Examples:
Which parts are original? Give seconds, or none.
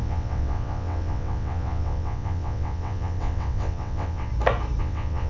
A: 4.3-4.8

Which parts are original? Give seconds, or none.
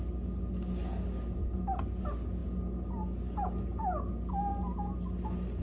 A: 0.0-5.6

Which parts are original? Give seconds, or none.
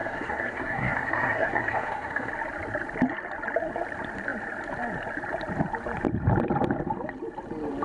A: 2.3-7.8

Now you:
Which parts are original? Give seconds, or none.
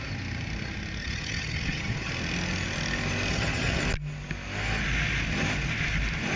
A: 0.0-1.0; 2.1-3.3; 3.8-6.4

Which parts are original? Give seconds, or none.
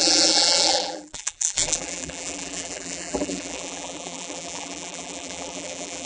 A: none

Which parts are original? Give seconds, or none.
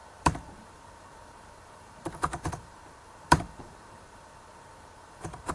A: none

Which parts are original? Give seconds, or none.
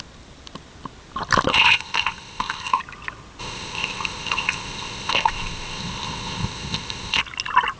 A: 0.0-1.5; 2.8-3.4; 7.2-7.8